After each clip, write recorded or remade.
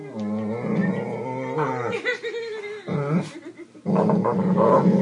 recorded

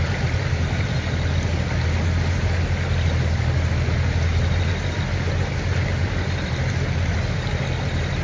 recorded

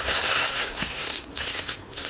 remade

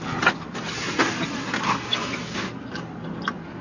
recorded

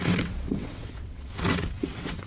remade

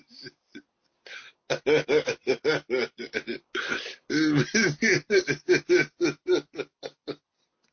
recorded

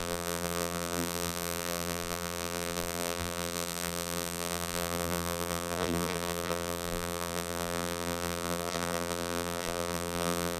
remade